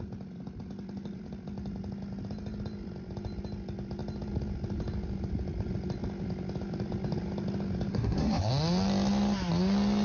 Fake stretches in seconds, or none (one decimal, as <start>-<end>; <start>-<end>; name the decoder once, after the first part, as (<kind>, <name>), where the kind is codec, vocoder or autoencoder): 7.9-8.5 (codec, SNAC)